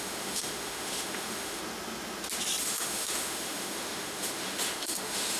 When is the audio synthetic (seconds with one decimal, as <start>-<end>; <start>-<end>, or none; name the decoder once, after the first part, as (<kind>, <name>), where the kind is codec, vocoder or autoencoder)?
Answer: 0.0-1.6 (autoencoder, DAC-VAE); 2.6-5.4